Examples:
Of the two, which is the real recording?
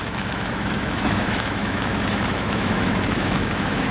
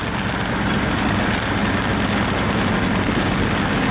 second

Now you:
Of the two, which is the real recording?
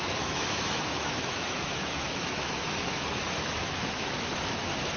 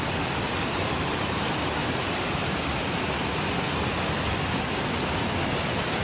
second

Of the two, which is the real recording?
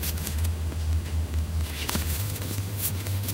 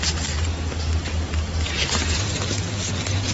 second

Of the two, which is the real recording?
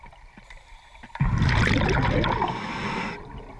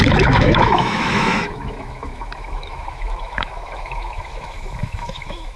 first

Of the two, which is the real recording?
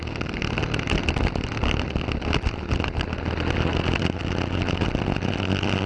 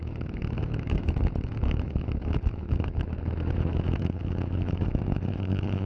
first